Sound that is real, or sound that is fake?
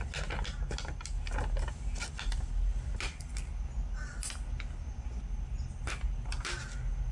real